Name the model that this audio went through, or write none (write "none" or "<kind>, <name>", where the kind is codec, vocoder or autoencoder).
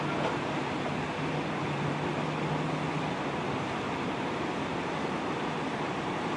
none